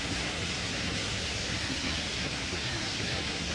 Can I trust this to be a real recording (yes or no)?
no